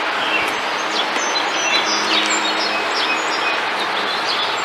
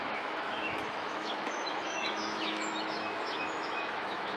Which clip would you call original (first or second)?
first